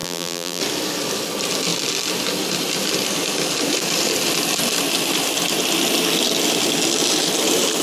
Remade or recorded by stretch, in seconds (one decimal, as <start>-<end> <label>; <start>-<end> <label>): 0.0-0.6 remade; 0.6-7.8 recorded